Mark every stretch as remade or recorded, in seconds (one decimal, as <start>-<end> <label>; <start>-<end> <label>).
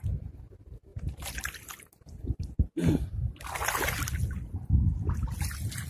0.0-5.9 recorded